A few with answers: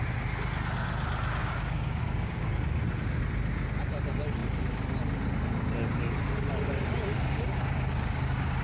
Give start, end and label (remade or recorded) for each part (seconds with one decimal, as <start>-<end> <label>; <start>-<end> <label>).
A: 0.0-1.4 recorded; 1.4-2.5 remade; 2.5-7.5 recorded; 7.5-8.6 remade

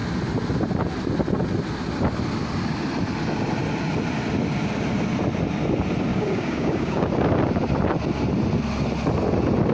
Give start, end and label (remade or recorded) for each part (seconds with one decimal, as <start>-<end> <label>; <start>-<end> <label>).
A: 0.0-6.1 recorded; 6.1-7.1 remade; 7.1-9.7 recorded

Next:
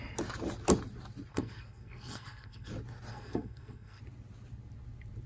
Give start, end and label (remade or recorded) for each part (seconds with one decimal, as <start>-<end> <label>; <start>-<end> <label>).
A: 0.0-1.3 recorded; 1.3-2.7 remade; 2.7-3.1 recorded; 3.1-4.0 remade; 4.0-5.3 recorded

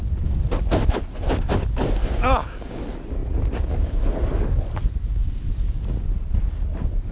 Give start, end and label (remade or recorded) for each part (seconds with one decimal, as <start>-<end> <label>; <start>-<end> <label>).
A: 0.0-2.0 recorded; 2.0-2.8 remade; 2.8-7.1 recorded

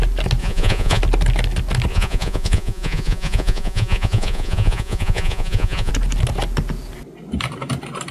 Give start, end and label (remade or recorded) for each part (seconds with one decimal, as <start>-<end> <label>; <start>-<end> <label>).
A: 0.0-0.4 recorded; 0.4-1.0 remade; 1.0-1.9 recorded; 1.9-5.9 remade; 5.9-8.1 recorded

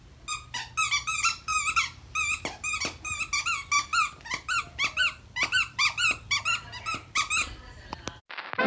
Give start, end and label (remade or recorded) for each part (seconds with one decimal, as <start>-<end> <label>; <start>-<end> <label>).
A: 0.0-8.7 recorded

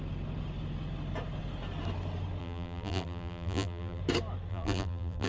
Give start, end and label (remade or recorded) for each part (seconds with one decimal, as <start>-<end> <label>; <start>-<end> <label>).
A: 0.0-2.4 recorded; 2.4-4.0 remade; 4.0-4.5 recorded; 4.5-5.3 remade

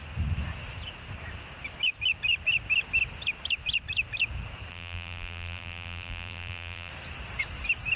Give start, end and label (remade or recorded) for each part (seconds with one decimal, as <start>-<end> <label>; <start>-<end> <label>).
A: 0.0-4.7 recorded; 4.7-6.9 remade; 6.9-8.0 recorded